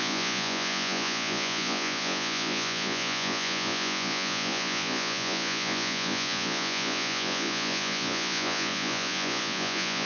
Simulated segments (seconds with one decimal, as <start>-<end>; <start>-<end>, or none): 0.0-10.1